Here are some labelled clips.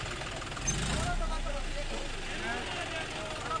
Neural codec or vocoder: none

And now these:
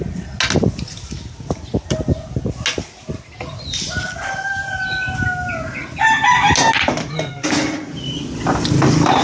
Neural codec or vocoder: none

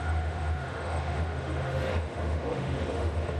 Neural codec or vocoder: autoencoder, DAC-VAE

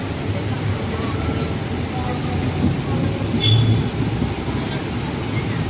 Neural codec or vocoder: none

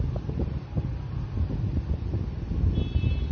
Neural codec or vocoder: none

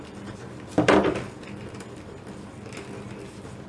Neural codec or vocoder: vocoder, BigVGAN v2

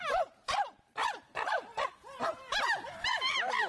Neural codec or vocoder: vocoder, BigVGAN v2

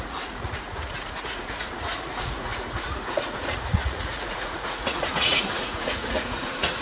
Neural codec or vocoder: vocoder, Vocos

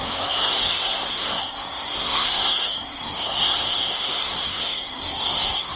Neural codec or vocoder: codec, SNAC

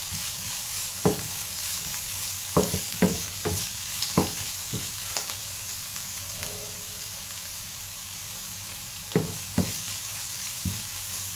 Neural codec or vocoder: codec, DAC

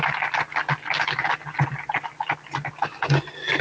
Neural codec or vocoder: none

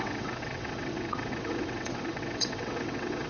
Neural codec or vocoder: vocoder, WaveNeXt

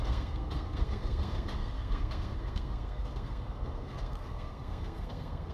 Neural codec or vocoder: codec, SNAC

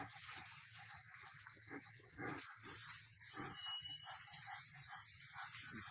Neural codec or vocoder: none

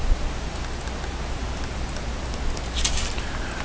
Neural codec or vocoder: none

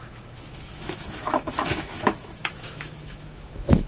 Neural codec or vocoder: autoencoder, DAC-VAE